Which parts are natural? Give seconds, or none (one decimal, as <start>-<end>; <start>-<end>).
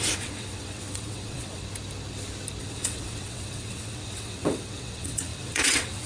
1.6-2.6